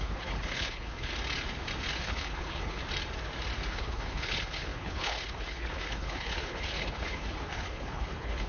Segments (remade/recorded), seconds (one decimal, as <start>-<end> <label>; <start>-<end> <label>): 0.0-1.1 remade; 1.1-1.9 recorded; 1.9-2.8 remade; 2.8-3.7 recorded; 3.7-8.5 remade

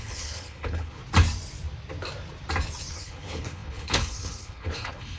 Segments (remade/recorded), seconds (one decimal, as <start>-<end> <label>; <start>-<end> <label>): 0.0-1.0 remade; 1.0-2.9 recorded; 2.9-5.2 remade

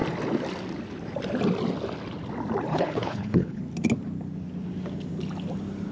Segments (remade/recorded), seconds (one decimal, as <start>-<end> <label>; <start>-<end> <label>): 0.0-2.7 recorded; 2.7-3.6 remade; 3.6-5.9 recorded

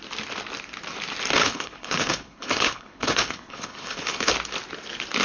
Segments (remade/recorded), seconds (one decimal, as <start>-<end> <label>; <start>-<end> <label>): 0.0-1.4 recorded; 1.4-4.3 remade; 4.3-5.2 recorded

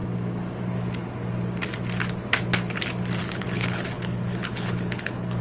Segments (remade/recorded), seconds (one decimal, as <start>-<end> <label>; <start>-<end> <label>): 0.0-3.2 recorded; 3.2-5.4 remade

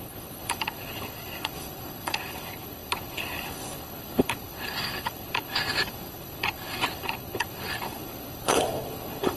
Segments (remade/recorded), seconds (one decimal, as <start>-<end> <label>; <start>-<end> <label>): 0.0-9.4 remade

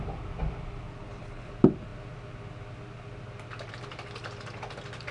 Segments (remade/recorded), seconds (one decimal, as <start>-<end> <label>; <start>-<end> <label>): 0.0-1.0 recorded; 1.0-1.5 remade; 1.5-5.1 recorded

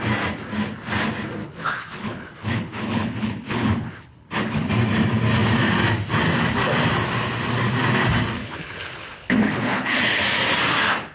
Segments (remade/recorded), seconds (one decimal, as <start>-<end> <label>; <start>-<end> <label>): 0.0-1.4 recorded; 1.4-4.7 remade; 4.7-8.4 recorded; 8.4-10.2 remade; 10.2-11.1 recorded